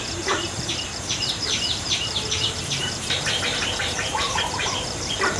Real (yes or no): no